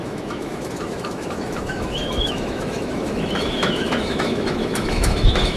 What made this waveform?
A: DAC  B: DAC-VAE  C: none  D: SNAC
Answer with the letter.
B